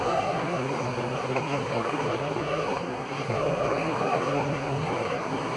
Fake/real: fake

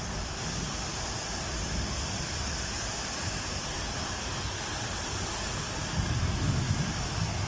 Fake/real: real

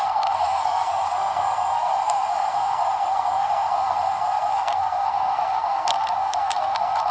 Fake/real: fake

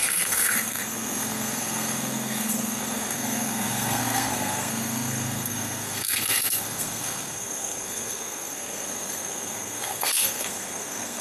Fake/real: fake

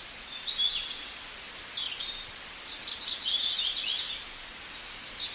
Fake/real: real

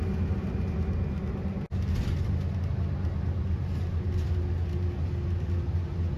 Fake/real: real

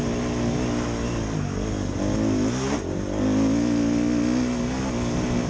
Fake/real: real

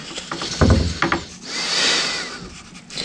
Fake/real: real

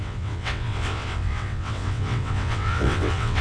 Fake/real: fake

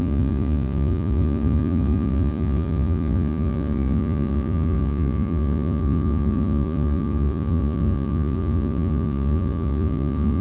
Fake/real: fake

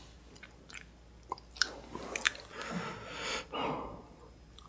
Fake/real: real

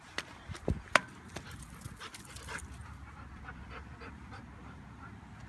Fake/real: real